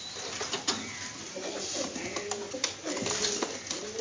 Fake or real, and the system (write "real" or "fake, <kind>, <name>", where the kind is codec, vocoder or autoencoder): real